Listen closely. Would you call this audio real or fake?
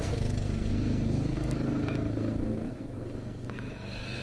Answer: fake